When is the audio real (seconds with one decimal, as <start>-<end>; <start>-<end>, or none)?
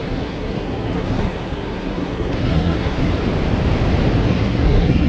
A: 3.1-4.2